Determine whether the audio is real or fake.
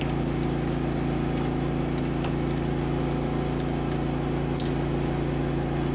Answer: real